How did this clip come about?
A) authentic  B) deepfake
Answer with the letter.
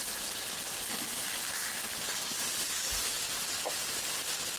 A